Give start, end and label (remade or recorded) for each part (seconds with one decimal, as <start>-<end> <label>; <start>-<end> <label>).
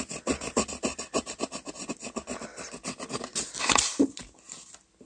0.0-5.1 recorded